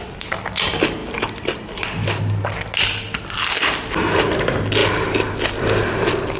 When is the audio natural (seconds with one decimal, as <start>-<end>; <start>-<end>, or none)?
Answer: 0.0-6.4